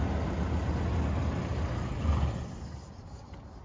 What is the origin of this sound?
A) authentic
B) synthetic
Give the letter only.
A